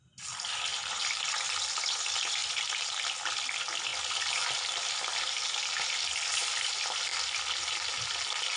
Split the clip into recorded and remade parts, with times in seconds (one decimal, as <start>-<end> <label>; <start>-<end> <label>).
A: 0.0-2.4 recorded; 2.4-3.0 remade; 3.0-8.6 recorded